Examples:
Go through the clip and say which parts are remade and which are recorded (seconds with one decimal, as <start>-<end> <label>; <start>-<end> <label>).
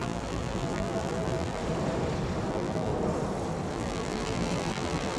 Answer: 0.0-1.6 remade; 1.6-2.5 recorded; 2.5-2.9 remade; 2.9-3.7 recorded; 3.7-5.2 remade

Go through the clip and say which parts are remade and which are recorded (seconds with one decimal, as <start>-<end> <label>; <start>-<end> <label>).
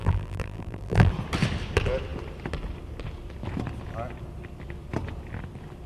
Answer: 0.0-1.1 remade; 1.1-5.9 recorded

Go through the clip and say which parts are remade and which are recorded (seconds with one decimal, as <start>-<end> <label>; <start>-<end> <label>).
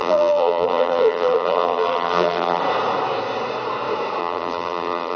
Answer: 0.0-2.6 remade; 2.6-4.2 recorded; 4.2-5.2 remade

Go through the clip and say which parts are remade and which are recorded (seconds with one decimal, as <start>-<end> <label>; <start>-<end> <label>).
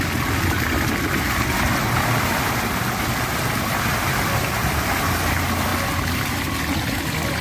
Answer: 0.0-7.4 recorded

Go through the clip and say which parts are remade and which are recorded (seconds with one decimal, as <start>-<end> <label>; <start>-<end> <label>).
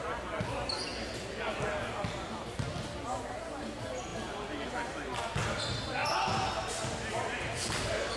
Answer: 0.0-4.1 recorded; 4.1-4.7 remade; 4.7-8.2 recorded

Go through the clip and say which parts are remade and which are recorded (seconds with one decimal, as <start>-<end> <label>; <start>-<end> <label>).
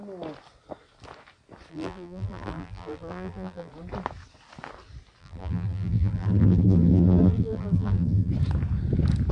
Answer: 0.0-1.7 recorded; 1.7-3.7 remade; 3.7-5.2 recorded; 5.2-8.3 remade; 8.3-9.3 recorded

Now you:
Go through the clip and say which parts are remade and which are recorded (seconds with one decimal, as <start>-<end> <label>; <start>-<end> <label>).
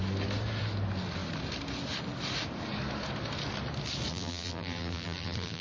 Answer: 0.0-4.1 recorded; 4.1-5.6 remade